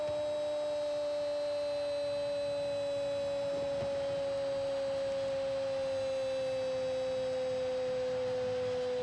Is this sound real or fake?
real